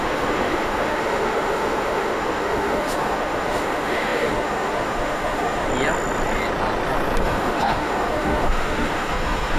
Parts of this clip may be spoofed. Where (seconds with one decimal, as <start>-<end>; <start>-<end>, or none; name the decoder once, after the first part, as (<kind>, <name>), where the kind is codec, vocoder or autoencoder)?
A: 0.0-5.7 (autoencoder, DAC-VAE); 7.2-9.6